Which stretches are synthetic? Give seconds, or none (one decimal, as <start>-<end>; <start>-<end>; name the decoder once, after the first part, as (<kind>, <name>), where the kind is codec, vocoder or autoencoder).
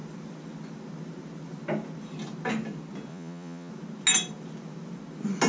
3.1-3.7 (vocoder, Vocos)